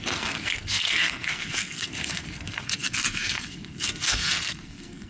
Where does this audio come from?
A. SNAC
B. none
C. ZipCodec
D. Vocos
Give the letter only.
A